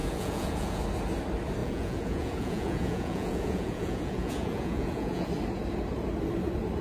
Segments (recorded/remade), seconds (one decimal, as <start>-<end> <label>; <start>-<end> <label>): 0.0-0.8 remade; 0.8-1.6 recorded; 1.6-5.3 remade; 5.3-6.8 recorded